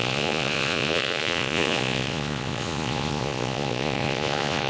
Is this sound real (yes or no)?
no